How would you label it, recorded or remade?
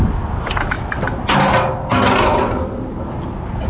recorded